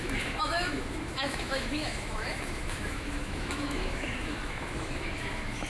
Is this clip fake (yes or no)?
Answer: yes